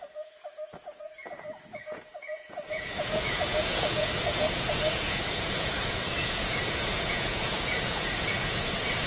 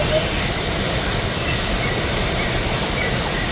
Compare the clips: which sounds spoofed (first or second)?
first